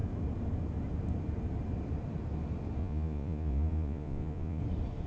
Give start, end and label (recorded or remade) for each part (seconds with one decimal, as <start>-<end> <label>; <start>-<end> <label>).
0.0-2.8 recorded; 2.8-4.6 remade; 4.6-5.1 recorded